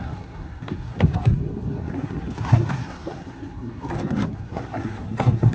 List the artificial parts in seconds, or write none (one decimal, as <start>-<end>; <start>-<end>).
0.0-5.5